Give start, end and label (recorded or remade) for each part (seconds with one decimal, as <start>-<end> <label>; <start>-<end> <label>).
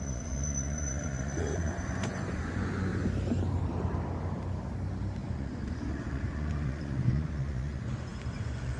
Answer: 0.0-2.9 remade; 2.9-5.3 recorded; 5.3-8.8 remade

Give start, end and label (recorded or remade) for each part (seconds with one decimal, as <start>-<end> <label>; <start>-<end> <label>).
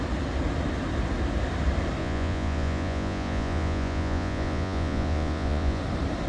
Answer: 0.0-2.0 recorded; 2.0-5.8 remade; 5.8-6.3 recorded